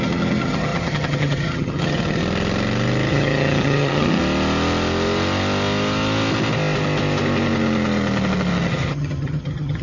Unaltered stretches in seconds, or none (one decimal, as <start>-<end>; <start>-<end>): 2.2-3.1; 4.2-8.7